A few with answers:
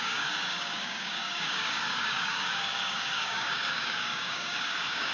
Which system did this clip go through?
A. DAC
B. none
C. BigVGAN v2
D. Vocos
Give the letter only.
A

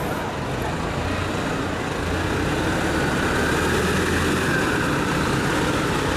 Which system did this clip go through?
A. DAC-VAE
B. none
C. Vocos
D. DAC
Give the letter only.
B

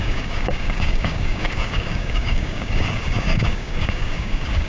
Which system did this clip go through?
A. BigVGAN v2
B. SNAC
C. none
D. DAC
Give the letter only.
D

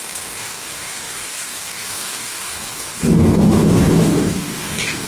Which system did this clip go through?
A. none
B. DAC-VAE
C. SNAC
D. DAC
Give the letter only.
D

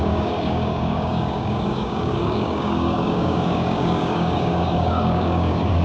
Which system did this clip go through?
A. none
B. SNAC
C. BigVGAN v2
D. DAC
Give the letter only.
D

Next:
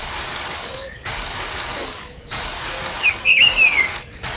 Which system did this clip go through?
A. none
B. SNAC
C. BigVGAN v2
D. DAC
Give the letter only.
D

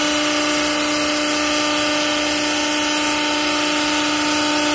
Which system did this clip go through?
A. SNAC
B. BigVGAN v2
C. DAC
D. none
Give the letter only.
D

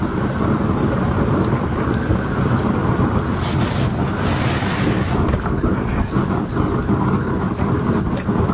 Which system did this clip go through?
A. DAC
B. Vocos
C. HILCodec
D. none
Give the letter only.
D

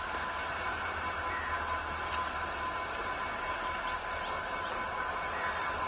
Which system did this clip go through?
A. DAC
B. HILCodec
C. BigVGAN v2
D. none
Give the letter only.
D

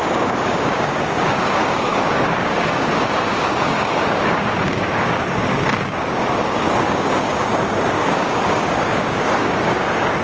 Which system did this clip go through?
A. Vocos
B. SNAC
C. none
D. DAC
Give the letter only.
D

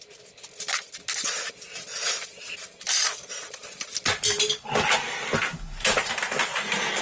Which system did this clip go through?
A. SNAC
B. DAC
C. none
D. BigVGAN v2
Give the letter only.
C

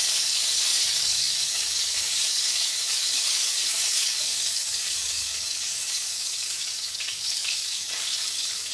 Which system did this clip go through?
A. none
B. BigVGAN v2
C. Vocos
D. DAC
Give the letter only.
D